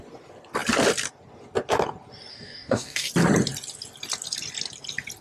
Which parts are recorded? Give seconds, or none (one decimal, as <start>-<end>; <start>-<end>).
0.0-2.3; 3.1-5.2